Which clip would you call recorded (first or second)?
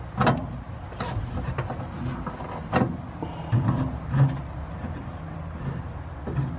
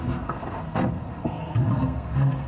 first